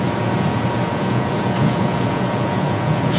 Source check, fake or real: fake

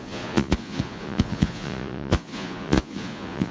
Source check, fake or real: fake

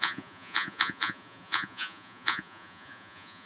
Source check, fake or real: fake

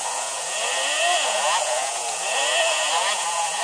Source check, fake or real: fake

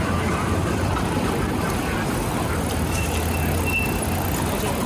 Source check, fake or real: real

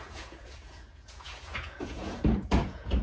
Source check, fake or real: fake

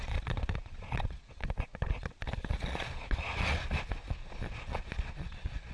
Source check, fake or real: fake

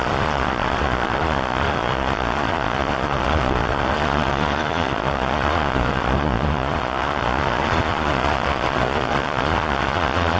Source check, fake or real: fake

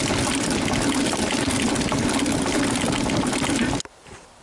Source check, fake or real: real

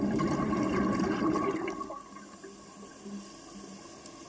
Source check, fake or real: real